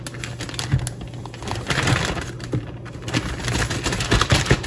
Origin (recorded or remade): recorded